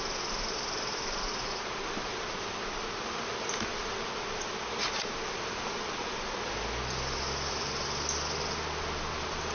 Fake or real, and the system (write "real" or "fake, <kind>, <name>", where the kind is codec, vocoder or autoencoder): real